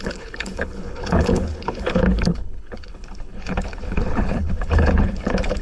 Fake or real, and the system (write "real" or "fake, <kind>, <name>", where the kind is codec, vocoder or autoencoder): fake, codec, HILCodec